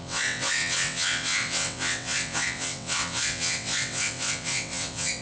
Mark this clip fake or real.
fake